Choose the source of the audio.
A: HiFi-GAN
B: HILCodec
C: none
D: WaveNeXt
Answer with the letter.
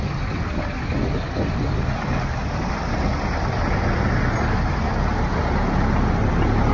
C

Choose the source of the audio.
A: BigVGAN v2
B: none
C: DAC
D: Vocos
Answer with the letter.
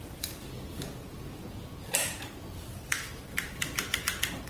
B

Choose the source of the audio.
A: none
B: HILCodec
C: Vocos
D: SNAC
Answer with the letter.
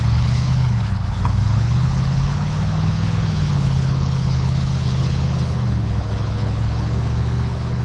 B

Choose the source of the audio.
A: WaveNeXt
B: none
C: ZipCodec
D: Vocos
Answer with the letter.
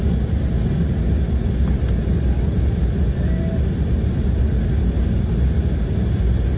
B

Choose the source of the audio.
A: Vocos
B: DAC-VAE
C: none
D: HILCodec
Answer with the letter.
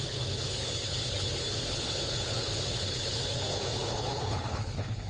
D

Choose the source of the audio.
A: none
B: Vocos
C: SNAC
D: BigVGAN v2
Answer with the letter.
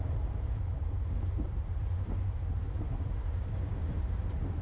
D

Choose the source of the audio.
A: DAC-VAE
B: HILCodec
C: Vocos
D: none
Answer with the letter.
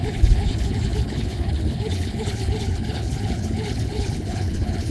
B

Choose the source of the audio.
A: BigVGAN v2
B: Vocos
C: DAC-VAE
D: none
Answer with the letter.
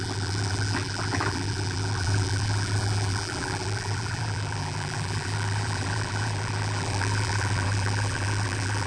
A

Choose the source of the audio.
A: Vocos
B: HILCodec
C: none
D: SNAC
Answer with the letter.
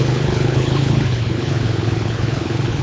B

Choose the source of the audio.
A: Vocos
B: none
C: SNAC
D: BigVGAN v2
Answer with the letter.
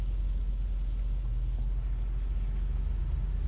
B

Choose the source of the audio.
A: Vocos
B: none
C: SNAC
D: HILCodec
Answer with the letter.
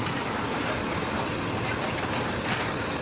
B